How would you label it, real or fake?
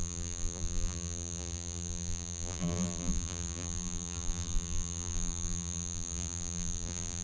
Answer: fake